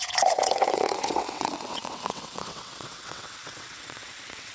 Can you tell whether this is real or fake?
fake